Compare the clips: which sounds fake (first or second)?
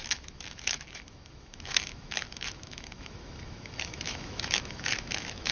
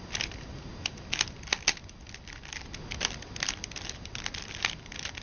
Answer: first